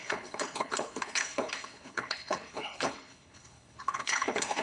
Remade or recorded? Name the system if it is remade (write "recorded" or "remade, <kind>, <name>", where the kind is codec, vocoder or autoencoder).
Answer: remade, codec, HILCodec